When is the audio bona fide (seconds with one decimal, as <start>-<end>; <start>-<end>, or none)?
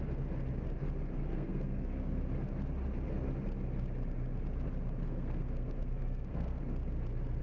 0.0-1.2; 2.2-5.0; 6.6-7.4